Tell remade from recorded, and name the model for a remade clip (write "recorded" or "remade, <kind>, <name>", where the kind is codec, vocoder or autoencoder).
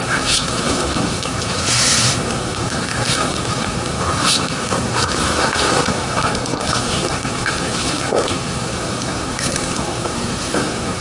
remade, codec, SNAC